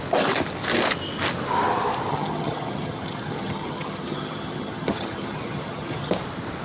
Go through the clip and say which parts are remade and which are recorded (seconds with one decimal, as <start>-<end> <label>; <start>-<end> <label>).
0.0-2.1 recorded; 2.1-6.1 remade; 6.1-6.6 recorded